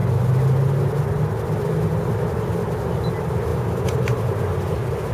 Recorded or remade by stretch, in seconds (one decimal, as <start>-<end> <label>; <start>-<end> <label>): 0.0-3.5 recorded; 3.5-4.2 remade; 4.2-5.1 recorded